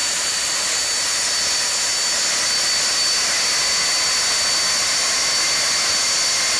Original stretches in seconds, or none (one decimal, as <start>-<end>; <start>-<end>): 0.6-6.6